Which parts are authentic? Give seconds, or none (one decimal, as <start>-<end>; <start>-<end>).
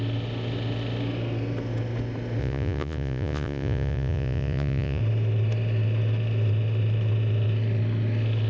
0.0-2.4; 5.0-8.5